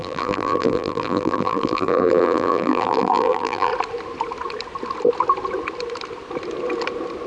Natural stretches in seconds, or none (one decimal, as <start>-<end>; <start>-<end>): 3.7-7.3